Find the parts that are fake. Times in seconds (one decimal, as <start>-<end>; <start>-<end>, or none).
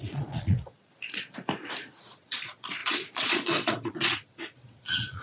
0.0-0.9; 2.0-5.2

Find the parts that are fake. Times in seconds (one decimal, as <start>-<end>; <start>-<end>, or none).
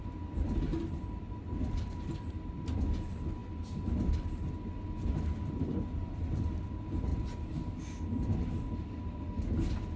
none